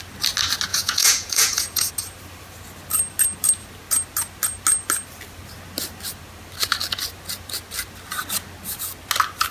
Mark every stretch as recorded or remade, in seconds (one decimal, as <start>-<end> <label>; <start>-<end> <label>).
0.0-0.7 recorded; 0.7-1.9 remade; 1.9-9.5 recorded